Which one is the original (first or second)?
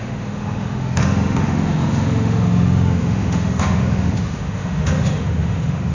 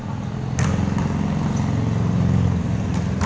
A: second